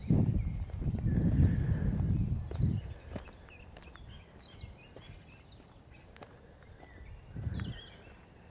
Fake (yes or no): no